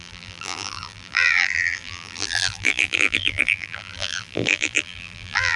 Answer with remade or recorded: remade